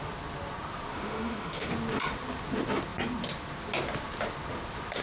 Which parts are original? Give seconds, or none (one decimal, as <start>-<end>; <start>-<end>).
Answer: 0.0-0.9; 1.7-5.0